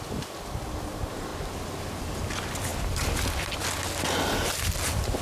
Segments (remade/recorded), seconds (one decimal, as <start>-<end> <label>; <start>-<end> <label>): 0.0-5.2 recorded